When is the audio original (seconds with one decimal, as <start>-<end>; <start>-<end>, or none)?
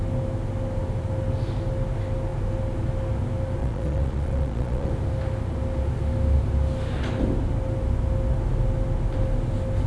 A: 0.0-3.6; 4.9-9.9